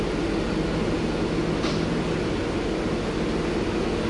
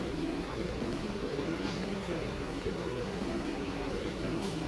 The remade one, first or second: second